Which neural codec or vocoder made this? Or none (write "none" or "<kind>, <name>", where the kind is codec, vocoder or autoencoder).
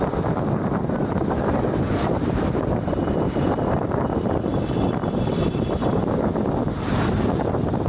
vocoder, BigVGAN v2